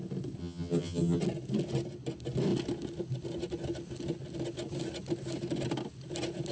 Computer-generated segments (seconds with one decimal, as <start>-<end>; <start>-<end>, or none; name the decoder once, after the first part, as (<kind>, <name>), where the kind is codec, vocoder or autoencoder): 0.4-1.2 (vocoder, HiFi-GAN)